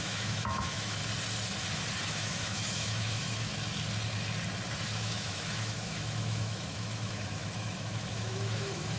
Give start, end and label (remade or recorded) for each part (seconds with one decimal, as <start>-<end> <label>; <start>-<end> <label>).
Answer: 0.0-1.0 remade; 1.0-2.1 recorded; 2.1-3.5 remade; 3.5-4.8 recorded; 4.8-9.0 remade